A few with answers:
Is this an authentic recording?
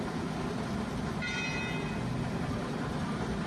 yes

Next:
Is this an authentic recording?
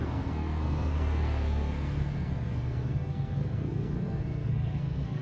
no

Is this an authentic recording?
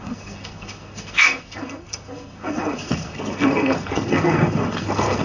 no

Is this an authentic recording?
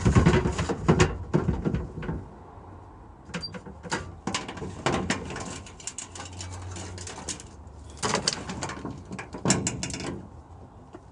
yes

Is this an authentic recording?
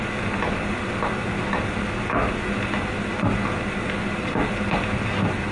yes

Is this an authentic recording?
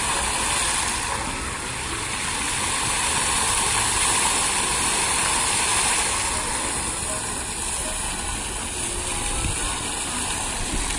yes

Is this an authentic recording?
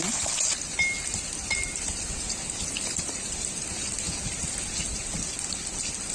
yes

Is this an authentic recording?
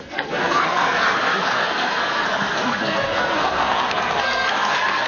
no